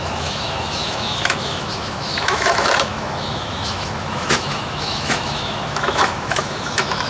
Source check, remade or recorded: remade